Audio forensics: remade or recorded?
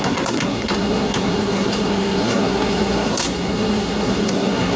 remade